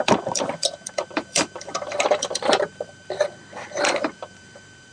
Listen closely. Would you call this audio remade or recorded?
remade